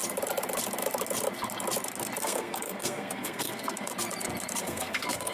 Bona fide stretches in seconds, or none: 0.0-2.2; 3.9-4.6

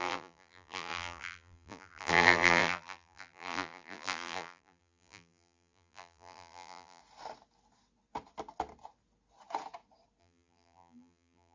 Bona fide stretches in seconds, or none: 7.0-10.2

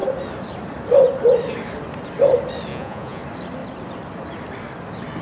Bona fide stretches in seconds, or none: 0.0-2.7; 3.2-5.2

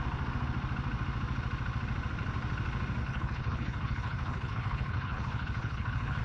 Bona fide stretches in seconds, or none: 0.0-3.0

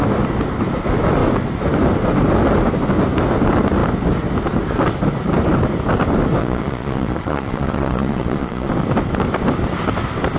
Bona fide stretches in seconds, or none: 0.0-6.4; 8.7-10.4

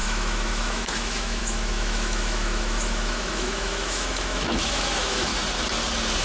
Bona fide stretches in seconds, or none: 5.3-6.2